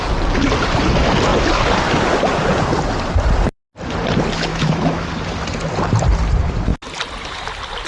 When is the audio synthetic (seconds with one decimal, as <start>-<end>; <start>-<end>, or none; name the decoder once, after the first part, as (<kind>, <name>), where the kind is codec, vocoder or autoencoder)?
4.5-5.1 (autoencoder, DAC-VAE)